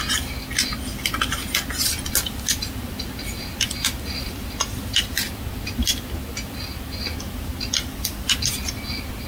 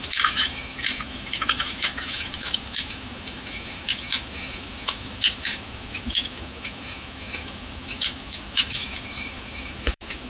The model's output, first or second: second